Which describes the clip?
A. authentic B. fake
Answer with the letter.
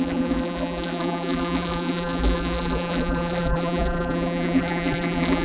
B